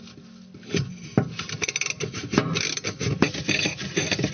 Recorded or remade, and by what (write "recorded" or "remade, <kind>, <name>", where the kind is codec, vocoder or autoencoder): recorded